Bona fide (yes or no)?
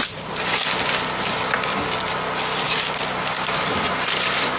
yes